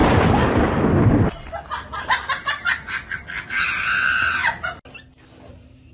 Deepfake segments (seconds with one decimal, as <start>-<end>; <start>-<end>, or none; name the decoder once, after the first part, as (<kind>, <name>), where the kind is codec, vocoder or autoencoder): 3.5-4.4 (vocoder, BigVGAN v2); 5.5-5.9